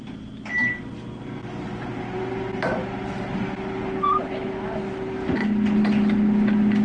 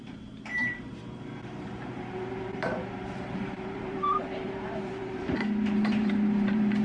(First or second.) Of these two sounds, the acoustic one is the first